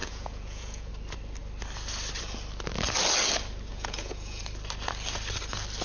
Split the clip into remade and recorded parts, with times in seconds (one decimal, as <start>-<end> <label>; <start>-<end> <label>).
0.0-0.9 remade; 0.9-3.7 recorded; 3.7-4.4 remade; 4.4-5.8 recorded